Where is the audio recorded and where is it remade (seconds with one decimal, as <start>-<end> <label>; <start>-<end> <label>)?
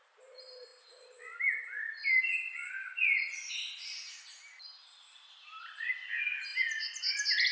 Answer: 0.0-7.5 recorded